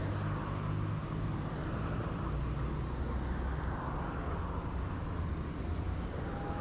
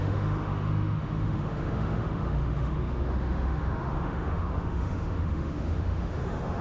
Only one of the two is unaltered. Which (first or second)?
first